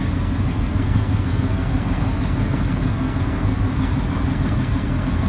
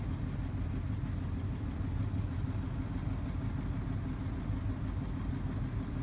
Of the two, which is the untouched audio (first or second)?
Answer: second